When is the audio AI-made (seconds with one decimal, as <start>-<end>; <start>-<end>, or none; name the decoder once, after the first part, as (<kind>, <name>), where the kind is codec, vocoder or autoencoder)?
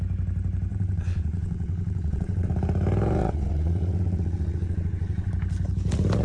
0.7-2.5 (vocoder, WaveNeXt); 3.2-5.3